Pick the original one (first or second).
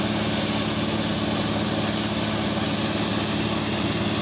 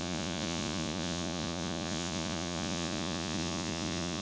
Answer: first